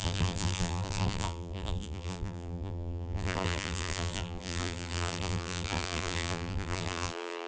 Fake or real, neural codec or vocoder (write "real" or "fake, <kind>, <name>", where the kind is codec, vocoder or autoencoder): fake, vocoder, BigVGAN v2